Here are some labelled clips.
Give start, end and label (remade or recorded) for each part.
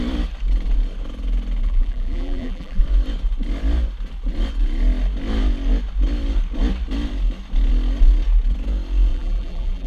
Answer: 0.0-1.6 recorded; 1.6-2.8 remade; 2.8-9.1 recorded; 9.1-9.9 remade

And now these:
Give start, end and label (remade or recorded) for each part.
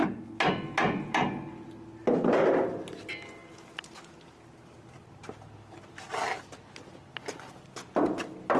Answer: 0.0-8.6 recorded